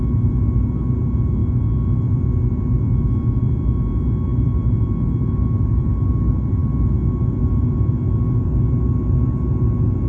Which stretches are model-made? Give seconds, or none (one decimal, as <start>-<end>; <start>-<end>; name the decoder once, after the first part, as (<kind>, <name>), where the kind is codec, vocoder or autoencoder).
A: none